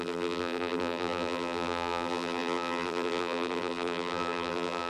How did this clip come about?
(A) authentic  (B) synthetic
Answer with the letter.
B